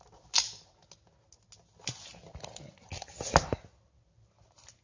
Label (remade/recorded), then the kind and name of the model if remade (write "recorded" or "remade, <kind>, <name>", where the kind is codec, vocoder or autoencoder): recorded